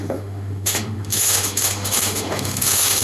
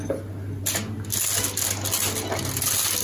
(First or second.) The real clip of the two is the second